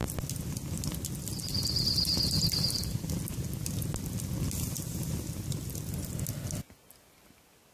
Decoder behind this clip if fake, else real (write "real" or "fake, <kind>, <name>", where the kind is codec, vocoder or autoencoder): real